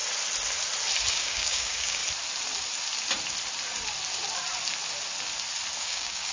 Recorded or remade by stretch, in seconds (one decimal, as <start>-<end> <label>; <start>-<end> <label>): 0.0-1.1 recorded; 1.1-2.0 remade; 2.0-5.8 recorded; 5.8-6.3 remade